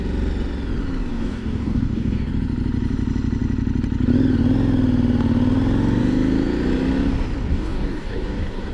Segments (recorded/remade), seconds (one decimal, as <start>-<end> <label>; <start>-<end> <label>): 0.0-1.1 recorded; 1.1-2.3 remade; 2.3-7.5 recorded; 7.5-8.7 remade